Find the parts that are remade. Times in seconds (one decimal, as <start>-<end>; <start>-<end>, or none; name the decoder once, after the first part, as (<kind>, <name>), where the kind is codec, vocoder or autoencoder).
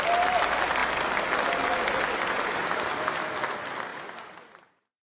none